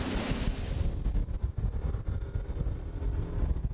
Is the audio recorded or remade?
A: recorded